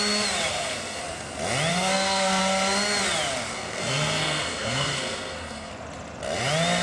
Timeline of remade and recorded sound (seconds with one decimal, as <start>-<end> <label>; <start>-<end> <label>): 0.0-0.5 recorded; 0.5-1.0 remade; 1.0-1.7 recorded; 1.7-2.4 remade; 2.4-3.5 recorded; 3.5-5.7 remade; 5.7-6.8 recorded